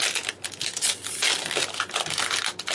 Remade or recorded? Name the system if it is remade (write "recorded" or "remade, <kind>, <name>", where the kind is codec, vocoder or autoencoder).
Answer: recorded